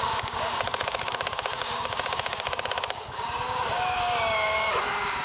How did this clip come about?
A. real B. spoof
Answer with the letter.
B